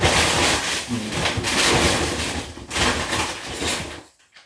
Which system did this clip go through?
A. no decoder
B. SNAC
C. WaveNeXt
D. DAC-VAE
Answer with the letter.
A